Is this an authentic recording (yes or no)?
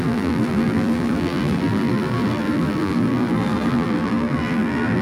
no